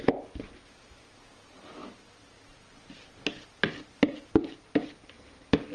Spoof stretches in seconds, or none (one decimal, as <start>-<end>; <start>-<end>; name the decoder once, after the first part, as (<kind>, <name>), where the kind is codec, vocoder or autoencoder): none